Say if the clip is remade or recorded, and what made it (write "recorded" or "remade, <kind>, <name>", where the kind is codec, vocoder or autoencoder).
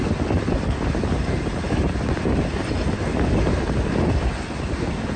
recorded